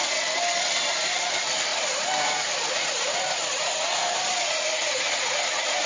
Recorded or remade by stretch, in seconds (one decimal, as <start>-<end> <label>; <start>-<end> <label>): 0.0-1.7 recorded; 1.7-5.2 remade; 5.2-5.9 recorded